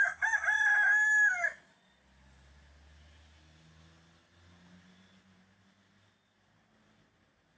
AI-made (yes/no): no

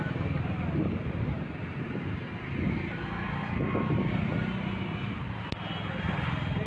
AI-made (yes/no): no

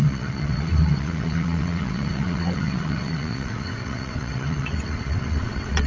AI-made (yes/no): yes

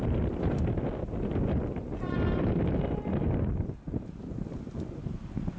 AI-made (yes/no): no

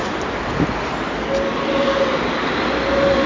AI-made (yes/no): no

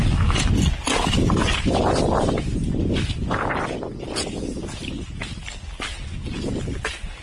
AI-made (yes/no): no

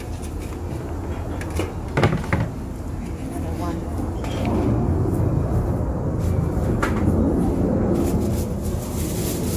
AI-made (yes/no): no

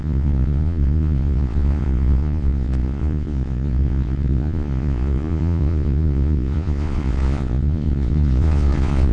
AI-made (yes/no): yes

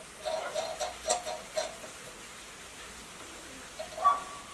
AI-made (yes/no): no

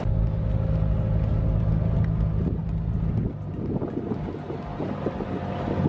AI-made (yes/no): no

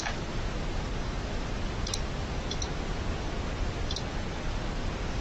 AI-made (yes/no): no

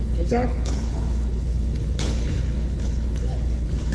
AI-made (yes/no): yes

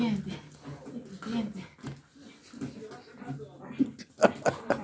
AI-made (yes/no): no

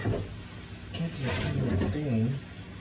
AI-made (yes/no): no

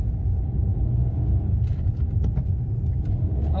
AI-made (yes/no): no